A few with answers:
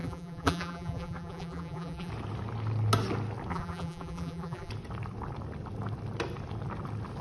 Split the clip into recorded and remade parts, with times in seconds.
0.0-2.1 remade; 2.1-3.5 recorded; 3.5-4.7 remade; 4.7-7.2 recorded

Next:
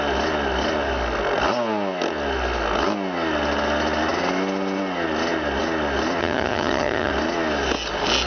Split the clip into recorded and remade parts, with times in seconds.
0.0-6.2 recorded; 6.2-7.1 remade; 7.1-8.3 recorded

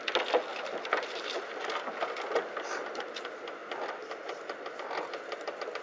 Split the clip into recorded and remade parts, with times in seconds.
0.0-0.5 recorded; 0.5-1.5 remade; 1.5-5.8 recorded

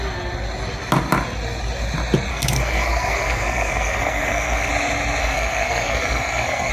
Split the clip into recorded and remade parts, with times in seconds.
0.0-2.3 recorded; 2.3-4.7 remade; 4.7-5.2 recorded; 5.2-6.7 remade

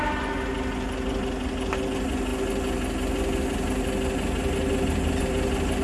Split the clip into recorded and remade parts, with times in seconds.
0.0-5.8 recorded

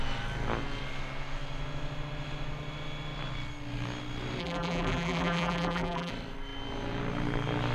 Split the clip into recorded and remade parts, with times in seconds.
0.0-4.4 recorded; 4.4-6.1 remade; 6.1-7.7 recorded

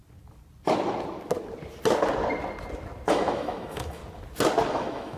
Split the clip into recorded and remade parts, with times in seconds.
0.0-3.1 recorded; 3.1-4.0 remade; 4.0-4.7 recorded; 4.7-5.2 remade

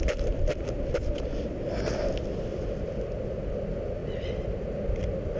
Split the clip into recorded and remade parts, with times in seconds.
0.0-5.4 recorded